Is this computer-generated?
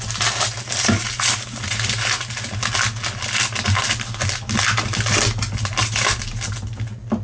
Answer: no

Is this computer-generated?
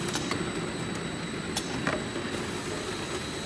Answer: no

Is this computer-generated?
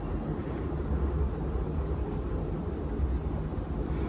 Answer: no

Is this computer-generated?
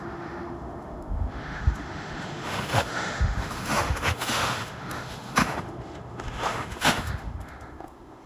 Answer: yes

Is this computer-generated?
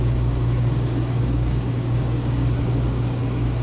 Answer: yes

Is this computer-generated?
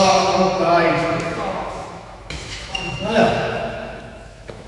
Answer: yes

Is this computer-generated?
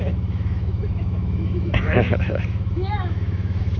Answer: yes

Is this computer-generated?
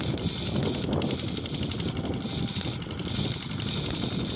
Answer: no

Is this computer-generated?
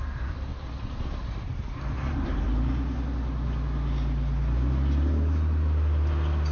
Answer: no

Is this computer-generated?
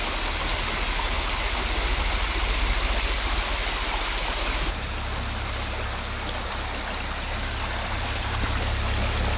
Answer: no